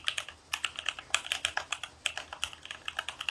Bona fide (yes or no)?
yes